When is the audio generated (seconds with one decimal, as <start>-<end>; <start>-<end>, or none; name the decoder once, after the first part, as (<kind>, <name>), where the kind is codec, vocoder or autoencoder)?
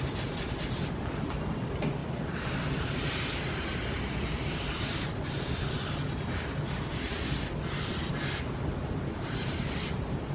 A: 2.0-7.2 (vocoder, BigVGAN v2)